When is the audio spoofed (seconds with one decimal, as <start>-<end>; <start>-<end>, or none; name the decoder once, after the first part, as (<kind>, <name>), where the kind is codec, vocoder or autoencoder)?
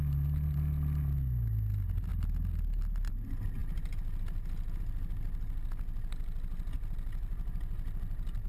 none